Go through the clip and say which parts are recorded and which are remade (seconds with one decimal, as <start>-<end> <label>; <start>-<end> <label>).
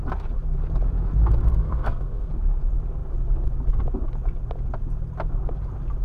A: 0.0-1.5 recorded; 1.5-2.3 remade; 2.3-6.0 recorded